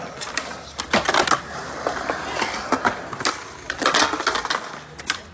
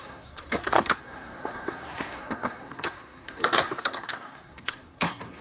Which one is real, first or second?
first